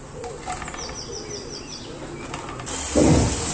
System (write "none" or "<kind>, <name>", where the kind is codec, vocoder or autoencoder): none